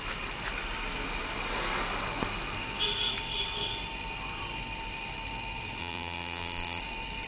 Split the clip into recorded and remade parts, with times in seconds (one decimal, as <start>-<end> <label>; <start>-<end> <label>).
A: 0.0-5.8 recorded; 5.8-6.8 remade; 6.8-7.3 recorded